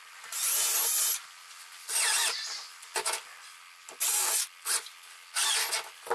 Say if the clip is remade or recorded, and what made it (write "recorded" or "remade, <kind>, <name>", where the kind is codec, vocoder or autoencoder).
recorded